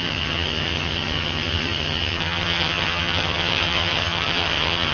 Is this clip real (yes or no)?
no